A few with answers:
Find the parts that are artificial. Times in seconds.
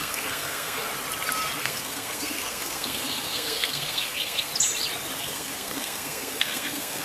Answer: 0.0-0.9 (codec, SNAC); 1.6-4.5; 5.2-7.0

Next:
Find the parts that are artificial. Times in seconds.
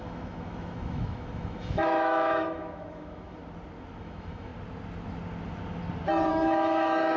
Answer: 0.0-3.4 (autoencoder, DAC-VAE); 4.0-4.5; 6.3-7.2